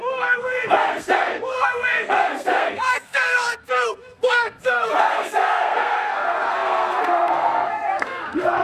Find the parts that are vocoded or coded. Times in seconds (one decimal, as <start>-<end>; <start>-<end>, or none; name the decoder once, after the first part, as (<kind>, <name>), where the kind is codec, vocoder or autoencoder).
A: 0.0-8.6 (codec, SNAC)